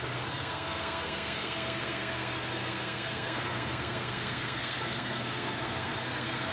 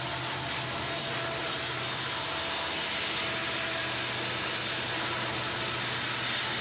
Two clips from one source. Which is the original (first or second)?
second